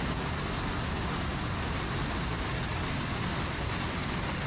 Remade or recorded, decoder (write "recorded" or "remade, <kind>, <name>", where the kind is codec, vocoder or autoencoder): recorded